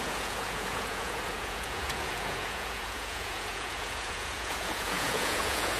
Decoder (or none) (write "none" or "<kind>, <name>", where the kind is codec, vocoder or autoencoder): vocoder, Vocos